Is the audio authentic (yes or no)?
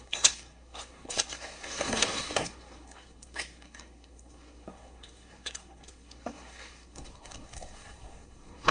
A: no